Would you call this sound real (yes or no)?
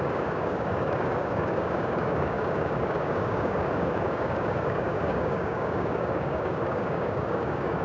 no